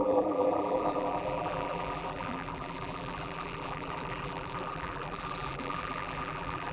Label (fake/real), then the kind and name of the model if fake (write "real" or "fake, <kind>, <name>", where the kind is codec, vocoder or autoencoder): fake, vocoder, BigVGAN v2